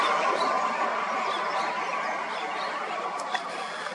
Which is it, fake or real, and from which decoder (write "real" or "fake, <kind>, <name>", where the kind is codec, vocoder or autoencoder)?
real